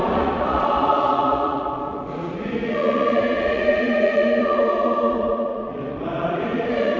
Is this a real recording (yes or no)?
no